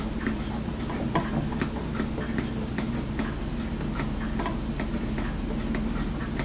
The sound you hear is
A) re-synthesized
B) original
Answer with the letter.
B